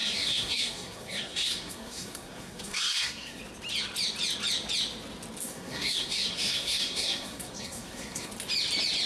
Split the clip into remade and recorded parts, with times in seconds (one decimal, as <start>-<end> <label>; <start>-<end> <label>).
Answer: 0.0-3.4 remade; 3.4-5.4 recorded; 5.4-8.3 remade; 8.3-9.1 recorded